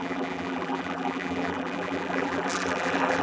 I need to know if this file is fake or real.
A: fake